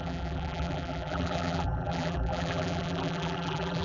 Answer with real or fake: fake